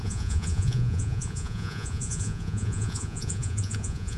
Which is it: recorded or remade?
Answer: remade